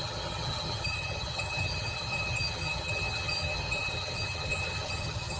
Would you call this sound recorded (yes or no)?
no